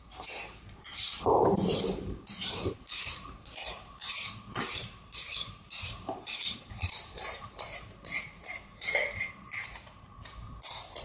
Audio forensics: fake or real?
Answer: fake